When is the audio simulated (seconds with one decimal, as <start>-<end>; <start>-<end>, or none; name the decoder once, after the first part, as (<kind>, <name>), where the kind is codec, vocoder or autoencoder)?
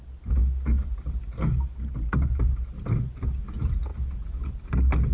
none